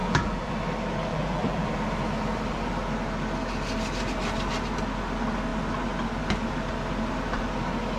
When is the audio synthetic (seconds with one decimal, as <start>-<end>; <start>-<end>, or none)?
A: 0.0-0.5; 1.1-1.7